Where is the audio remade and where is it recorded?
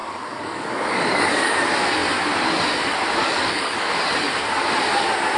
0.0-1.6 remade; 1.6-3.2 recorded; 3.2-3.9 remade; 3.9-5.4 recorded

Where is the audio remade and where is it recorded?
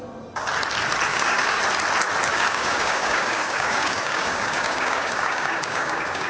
0.0-1.1 recorded; 1.1-1.6 remade; 1.6-2.3 recorded; 2.3-6.3 remade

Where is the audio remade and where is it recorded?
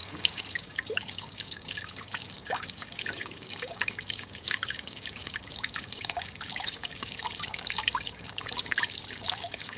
0.0-9.8 remade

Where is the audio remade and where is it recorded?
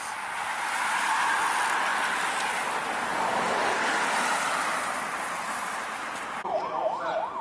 0.0-3.1 recorded; 3.1-3.8 remade; 3.8-7.4 recorded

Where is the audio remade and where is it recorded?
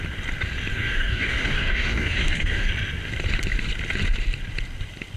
0.0-0.7 recorded; 0.7-2.7 remade; 2.7-5.2 recorded